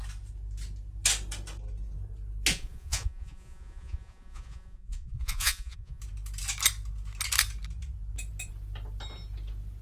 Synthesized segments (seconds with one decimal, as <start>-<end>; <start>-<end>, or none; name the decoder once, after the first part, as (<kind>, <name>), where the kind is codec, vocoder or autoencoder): 2.5-6.0 (vocoder, Vocos)